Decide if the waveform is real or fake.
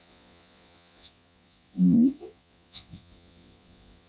fake